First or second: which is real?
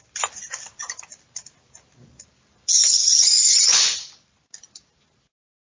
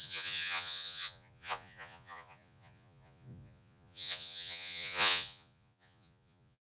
first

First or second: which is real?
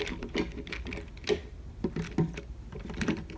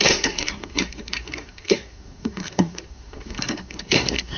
first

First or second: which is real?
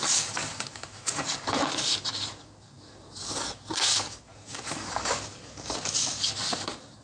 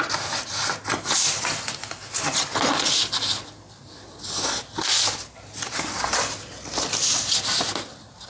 second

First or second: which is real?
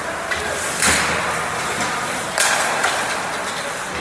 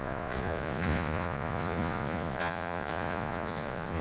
first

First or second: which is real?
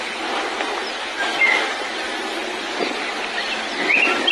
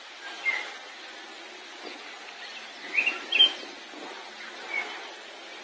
second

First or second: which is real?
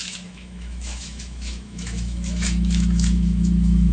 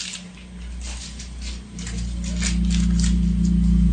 second